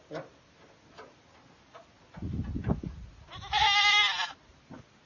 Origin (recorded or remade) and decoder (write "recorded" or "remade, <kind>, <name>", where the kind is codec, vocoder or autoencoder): recorded